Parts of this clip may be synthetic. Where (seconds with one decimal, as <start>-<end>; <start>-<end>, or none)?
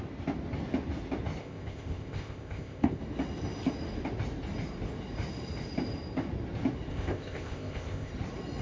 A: 1.4-3.0; 6.9-8.1